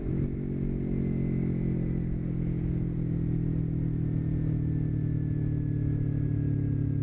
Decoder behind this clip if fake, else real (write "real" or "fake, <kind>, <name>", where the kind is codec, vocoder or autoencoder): real